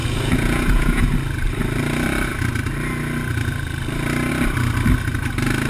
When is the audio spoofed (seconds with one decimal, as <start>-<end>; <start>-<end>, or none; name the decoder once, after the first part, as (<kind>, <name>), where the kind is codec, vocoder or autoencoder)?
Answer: 0.0-1.1 (vocoder, Vocos)